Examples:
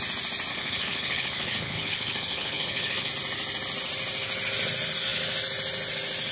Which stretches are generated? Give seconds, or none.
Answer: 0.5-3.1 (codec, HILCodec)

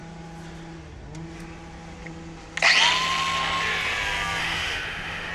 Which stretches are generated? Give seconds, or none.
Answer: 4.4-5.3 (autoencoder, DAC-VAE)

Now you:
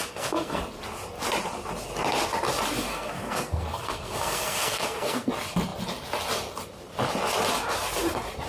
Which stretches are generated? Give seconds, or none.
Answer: 0.0-0.6 (codec, SNAC); 2.9-5.3

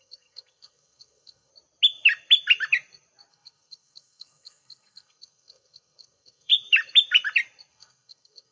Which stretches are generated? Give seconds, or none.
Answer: 0.0-1.5 (codec, SNAC); 3.3-6.5; 7.7-8.5

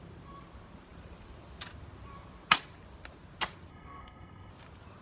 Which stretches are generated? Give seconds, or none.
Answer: 3.7-4.5 (codec, SNAC)

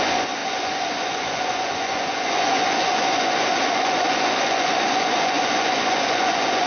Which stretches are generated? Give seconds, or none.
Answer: 0.0-6.7 (vocoder, Vocos)

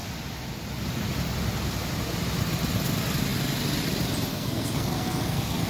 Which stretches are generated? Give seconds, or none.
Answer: 4.3-5.7 (codec, SNAC)